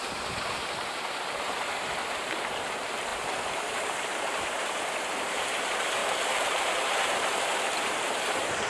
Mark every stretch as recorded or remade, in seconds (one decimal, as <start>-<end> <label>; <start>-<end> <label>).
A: 0.0-8.7 remade